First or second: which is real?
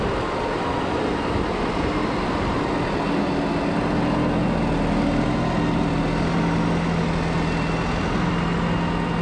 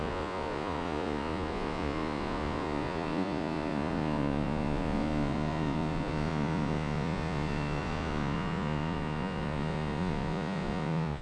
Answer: first